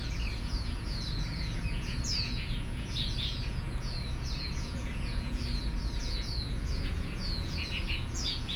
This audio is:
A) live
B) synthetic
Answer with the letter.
B